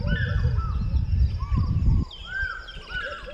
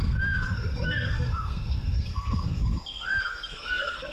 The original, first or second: first